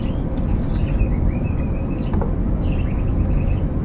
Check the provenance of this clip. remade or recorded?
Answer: recorded